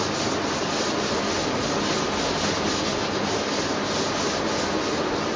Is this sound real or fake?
real